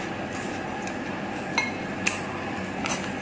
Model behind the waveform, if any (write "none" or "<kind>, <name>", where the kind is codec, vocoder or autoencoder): none